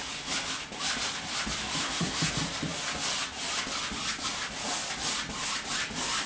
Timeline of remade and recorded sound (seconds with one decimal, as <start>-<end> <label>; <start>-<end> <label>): 0.0-1.8 recorded; 1.8-2.3 remade; 2.3-6.3 recorded